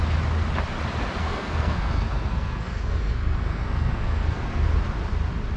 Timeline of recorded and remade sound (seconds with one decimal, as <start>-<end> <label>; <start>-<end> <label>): 0.0-1.2 recorded; 1.2-4.6 remade; 4.6-5.6 recorded